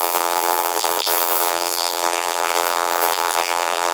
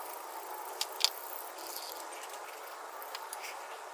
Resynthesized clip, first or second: first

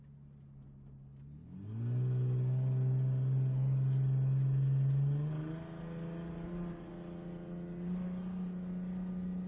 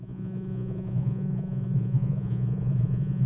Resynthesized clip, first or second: second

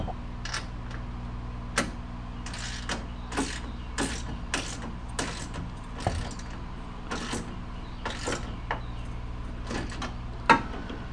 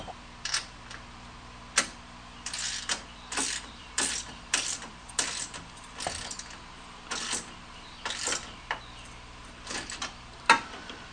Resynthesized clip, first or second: second